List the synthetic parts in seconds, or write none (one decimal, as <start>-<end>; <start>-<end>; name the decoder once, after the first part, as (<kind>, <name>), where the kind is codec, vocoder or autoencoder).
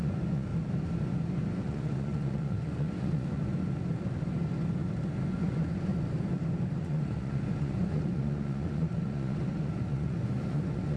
0.0-0.5 (vocoder, Vocos); 1.6-3.6; 5.3-5.9; 6.8-11.0